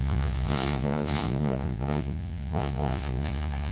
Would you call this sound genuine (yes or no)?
no